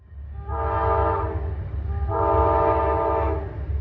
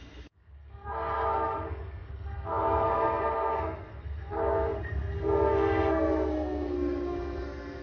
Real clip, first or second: first